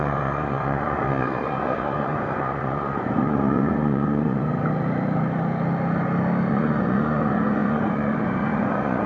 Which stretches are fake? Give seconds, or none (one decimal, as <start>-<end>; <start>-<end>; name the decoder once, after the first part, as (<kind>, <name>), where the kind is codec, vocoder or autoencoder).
0.0-4.5 (vocoder, Vocos); 6.5-9.1